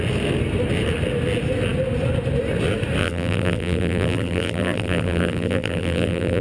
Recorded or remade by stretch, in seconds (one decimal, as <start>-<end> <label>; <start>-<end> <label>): 0.0-3.0 recorded; 3.0-6.4 remade